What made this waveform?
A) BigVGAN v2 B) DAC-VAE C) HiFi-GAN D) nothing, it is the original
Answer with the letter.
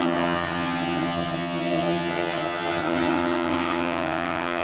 C